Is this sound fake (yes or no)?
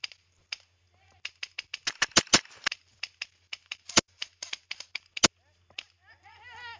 no